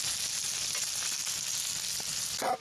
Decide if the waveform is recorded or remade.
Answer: recorded